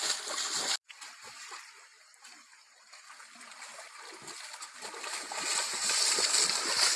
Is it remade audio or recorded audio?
recorded